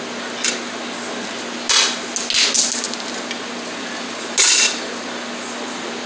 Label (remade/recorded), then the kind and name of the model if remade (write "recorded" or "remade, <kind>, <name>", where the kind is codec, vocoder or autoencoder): recorded